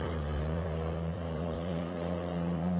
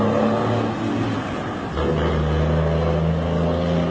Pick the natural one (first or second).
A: second